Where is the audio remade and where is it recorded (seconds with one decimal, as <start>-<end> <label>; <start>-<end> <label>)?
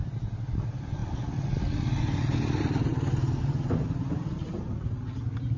0.0-5.6 recorded